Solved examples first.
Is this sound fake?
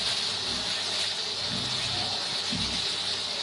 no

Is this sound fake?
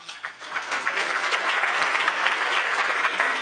yes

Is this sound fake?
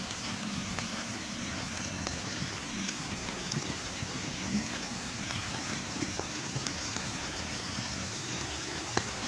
yes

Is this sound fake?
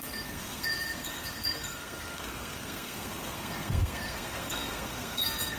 yes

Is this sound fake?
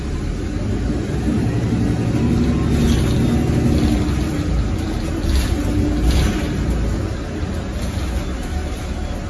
no